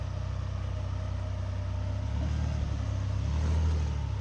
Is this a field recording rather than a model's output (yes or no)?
yes